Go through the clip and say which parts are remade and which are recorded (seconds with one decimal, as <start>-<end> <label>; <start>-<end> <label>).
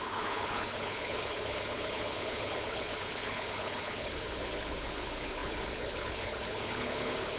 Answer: 0.0-7.4 remade